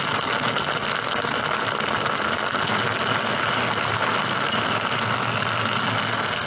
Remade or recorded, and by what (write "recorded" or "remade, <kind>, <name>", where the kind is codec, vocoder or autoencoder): recorded